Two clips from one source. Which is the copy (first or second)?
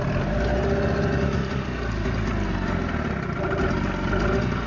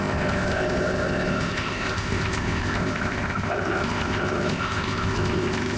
second